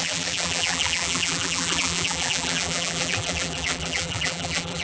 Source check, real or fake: fake